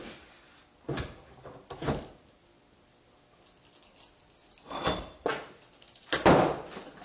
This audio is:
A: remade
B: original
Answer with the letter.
B